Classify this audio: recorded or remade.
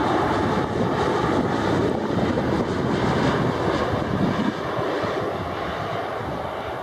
recorded